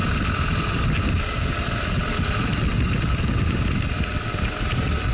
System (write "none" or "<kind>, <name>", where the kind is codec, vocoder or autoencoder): none